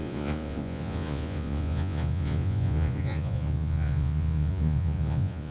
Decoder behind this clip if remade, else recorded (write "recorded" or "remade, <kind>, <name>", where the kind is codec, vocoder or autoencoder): remade, vocoder, Vocos